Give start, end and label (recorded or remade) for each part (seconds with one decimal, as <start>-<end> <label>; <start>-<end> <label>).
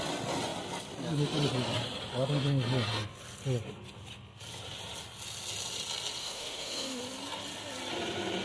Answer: 0.0-6.2 recorded; 6.2-7.0 remade; 7.0-8.4 recorded